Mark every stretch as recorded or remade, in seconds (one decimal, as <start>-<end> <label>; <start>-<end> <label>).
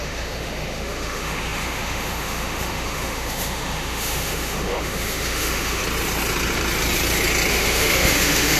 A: 0.0-5.8 remade; 5.8-7.5 recorded; 7.5-8.6 remade